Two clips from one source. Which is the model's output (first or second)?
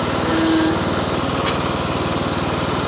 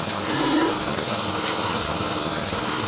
second